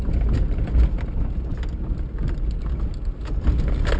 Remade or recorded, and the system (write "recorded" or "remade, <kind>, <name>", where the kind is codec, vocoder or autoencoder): recorded